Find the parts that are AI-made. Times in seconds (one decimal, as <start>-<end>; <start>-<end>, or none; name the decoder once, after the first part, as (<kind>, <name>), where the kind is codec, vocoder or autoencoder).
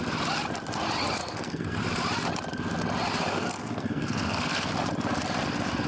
1.2-1.8 (codec, SNAC); 3.3-4.7